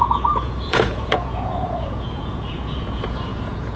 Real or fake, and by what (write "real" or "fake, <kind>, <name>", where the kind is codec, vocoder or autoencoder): fake, vocoder, Vocos